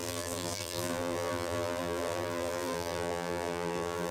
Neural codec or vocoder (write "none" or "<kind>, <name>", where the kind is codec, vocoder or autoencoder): vocoder, BigVGAN v2